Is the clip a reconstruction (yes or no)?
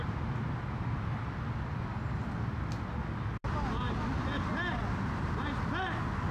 no